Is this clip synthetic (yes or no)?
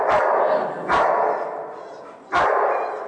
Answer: no